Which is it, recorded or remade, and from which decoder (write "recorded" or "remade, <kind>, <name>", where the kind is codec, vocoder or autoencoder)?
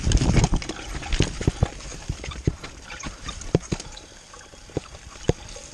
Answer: remade, vocoder, BigVGAN v2